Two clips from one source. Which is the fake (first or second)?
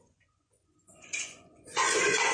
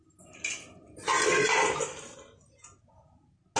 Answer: first